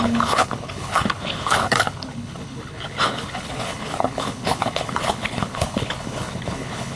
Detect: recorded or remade remade